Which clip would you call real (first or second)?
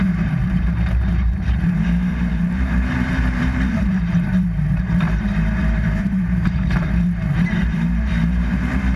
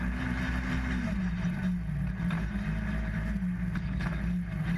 second